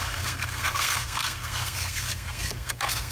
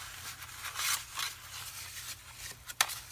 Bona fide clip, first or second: second